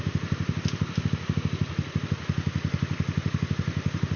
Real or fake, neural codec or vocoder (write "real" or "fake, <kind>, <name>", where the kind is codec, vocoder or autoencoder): real